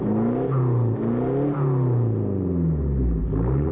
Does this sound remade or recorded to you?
recorded